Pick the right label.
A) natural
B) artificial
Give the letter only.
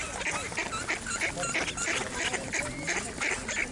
A